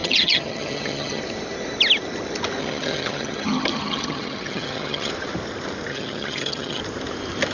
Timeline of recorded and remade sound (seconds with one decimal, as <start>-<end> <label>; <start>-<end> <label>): 0.0-1.2 remade; 1.2-2.6 recorded; 2.6-5.1 remade; 5.1-5.9 recorded; 5.9-6.8 remade; 6.8-7.5 recorded